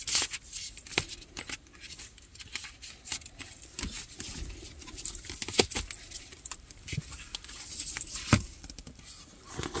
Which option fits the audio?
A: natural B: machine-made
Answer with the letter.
A